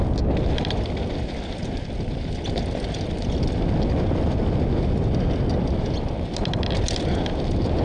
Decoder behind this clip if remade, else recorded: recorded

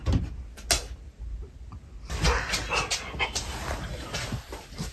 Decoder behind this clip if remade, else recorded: recorded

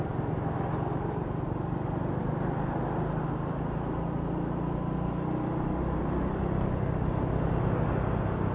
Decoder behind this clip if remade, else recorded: recorded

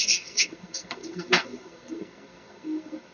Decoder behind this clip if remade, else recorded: remade, codec, SNAC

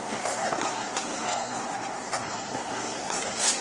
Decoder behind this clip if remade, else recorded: remade, codec, SNAC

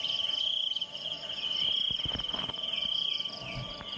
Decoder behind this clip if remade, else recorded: recorded